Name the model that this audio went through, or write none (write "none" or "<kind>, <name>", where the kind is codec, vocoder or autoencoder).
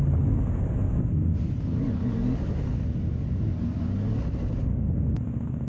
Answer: none